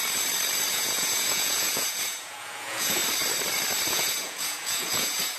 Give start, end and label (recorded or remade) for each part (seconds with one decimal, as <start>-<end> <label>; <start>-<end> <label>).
0.0-0.7 recorded; 0.7-3.0 remade; 3.0-3.9 recorded; 3.9-5.4 remade